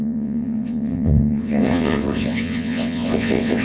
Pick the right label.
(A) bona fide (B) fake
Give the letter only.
B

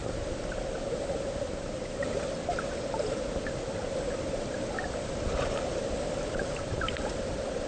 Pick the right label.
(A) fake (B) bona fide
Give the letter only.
B